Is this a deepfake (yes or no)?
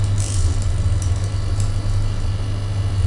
no